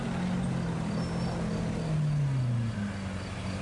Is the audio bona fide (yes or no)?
yes